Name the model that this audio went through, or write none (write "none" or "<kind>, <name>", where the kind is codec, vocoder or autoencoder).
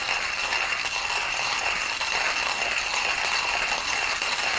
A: none